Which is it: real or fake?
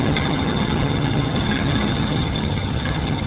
fake